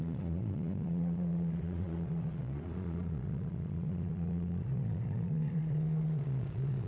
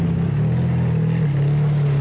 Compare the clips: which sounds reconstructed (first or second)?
first